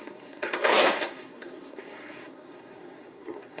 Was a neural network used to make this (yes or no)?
yes